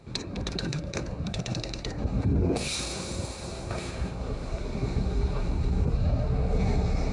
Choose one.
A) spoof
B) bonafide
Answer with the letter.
A